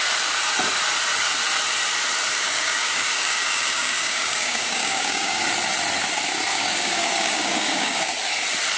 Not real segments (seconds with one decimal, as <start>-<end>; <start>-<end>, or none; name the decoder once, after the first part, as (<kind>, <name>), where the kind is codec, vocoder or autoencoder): 2.3-5.4 (codec, DAC); 6.5-8.1